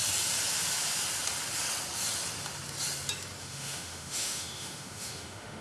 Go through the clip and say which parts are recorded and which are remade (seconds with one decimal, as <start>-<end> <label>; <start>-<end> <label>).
0.0-3.4 recorded; 3.4-5.6 remade